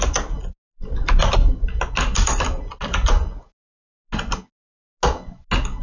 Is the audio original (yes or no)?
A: yes